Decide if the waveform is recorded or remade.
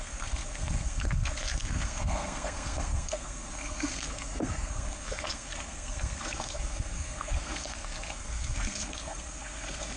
remade